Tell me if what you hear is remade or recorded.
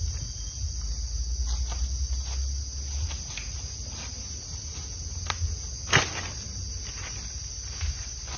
recorded